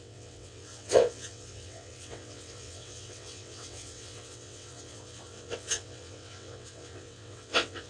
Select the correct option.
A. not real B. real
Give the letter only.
A